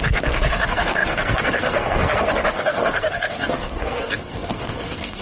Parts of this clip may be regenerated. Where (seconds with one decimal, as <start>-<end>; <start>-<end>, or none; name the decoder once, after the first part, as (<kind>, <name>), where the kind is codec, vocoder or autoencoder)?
0.0-5.2 (codec, SNAC)